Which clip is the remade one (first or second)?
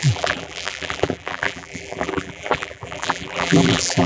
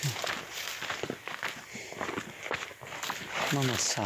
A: first